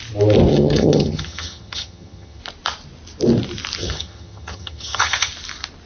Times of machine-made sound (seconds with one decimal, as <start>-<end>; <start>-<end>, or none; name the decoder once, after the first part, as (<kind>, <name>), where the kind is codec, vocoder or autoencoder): 0.5-2.4 (vocoder, HiFi-GAN); 3.8-5.3